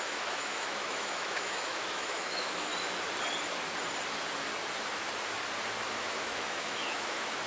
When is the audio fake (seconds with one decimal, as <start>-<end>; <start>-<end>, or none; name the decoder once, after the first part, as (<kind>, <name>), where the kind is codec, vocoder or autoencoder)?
0.0-2.7 (autoencoder, DAC-VAE); 5.9-7.5